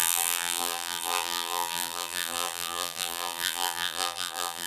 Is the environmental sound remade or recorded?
remade